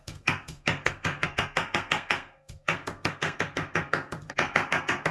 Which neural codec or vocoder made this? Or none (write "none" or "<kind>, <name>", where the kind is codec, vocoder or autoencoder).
codec, SNAC